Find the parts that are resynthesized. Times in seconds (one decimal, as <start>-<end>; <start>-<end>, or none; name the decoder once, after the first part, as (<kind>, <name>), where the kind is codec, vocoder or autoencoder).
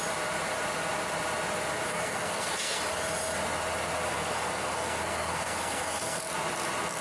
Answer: 1.9-2.8 (codec, SNAC); 4.1-6.2